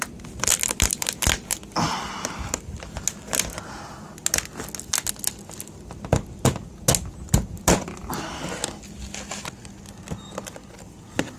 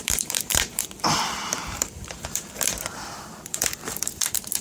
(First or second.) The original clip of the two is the first